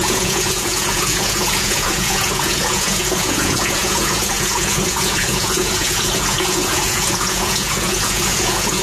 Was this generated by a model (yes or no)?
yes